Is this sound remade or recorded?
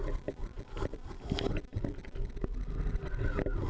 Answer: recorded